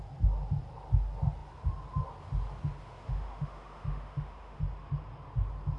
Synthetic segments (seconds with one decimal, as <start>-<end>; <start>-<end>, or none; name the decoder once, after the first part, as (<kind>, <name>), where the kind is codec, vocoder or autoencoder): 2.8-4.6 (autoencoder, DAC-VAE)